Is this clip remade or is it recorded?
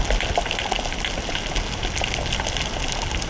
recorded